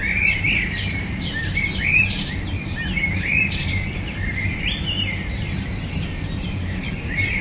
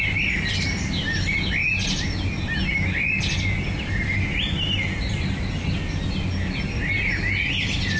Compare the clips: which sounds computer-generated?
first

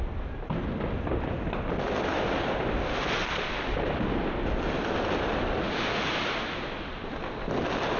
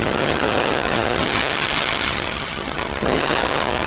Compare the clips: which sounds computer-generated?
second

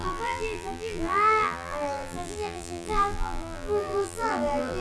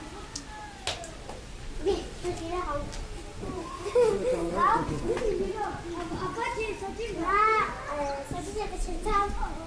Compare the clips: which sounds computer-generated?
first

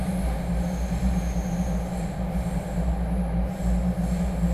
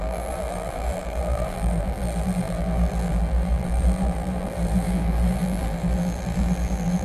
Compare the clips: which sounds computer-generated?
second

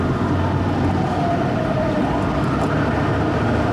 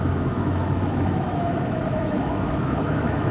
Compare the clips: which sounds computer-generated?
second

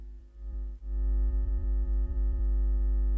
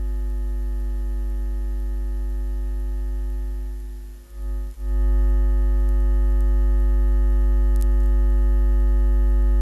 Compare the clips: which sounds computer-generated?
first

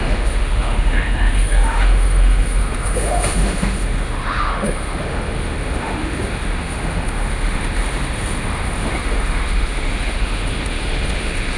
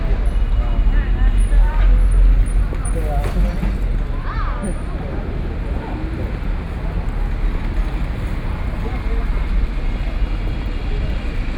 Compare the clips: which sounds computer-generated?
first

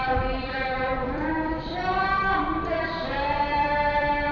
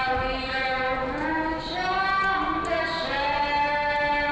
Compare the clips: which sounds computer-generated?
first